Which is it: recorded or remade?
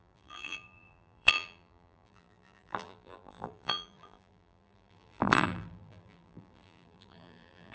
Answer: remade